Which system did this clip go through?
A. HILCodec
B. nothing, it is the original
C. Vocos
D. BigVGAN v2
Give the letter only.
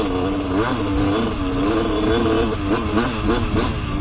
B